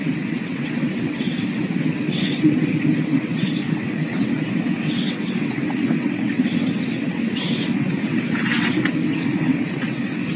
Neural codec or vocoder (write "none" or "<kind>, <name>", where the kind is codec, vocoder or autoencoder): vocoder, WaveNeXt